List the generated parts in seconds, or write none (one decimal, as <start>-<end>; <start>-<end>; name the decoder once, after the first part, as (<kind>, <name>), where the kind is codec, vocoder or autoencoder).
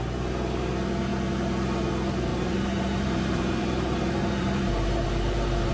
2.3-5.7 (vocoder, BigVGAN v2)